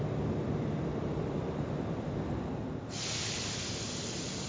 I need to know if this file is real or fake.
real